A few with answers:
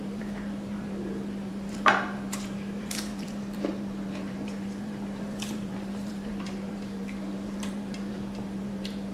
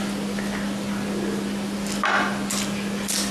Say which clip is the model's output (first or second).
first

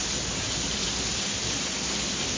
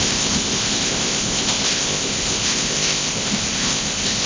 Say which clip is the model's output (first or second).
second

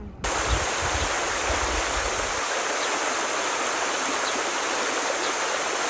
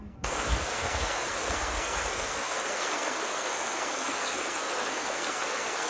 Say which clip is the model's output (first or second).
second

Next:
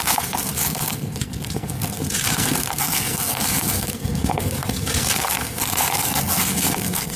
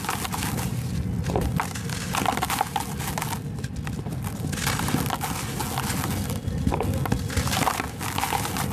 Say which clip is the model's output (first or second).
first